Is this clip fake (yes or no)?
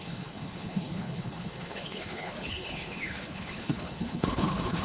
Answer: yes